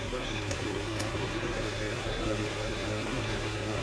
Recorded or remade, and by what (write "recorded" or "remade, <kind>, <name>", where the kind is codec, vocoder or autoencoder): remade, codec, SNAC